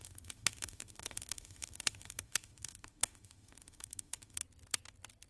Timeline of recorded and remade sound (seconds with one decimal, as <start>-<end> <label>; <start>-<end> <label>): 0.0-4.4 remade; 4.4-5.3 recorded